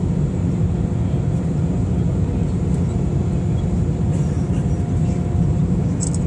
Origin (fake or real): real